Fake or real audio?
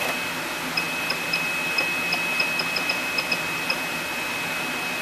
real